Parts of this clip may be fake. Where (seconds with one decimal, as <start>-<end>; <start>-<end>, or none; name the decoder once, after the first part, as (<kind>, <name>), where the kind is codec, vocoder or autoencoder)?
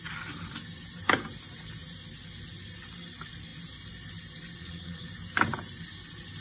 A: 4.6-5.1 (vocoder, WaveNeXt)